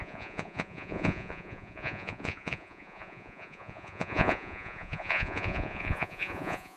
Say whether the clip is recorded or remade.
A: remade